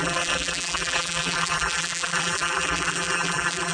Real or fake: fake